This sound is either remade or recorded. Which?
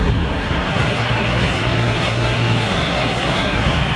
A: remade